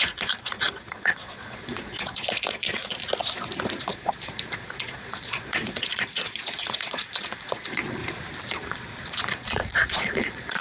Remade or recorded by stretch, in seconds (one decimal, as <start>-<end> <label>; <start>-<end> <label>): 0.0-3.0 remade; 3.0-3.8 recorded; 3.8-8.0 remade; 8.0-8.5 recorded; 8.5-10.6 remade